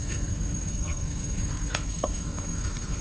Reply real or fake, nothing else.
fake